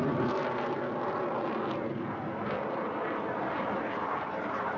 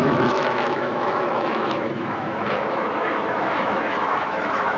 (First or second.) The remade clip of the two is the second